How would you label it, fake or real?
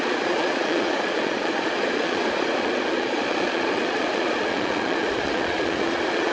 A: fake